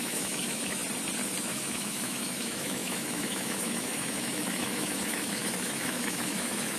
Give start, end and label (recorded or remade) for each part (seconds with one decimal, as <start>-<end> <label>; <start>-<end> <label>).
0.0-0.8 remade; 0.8-1.4 recorded; 1.4-6.8 remade